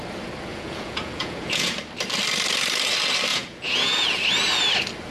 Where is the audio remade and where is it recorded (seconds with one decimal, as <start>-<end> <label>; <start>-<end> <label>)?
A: 0.0-0.5 recorded; 0.5-1.7 remade; 1.7-3.3 recorded; 3.3-4.2 remade; 4.2-5.1 recorded